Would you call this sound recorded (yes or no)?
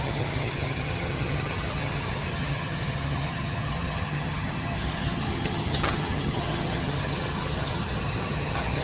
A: no